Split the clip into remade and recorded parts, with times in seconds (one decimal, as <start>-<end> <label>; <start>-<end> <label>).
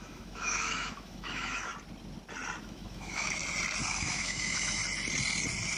0.0-1.7 remade; 1.7-2.6 recorded; 2.6-3.4 remade; 3.4-3.9 recorded; 3.9-4.8 remade; 4.8-5.8 recorded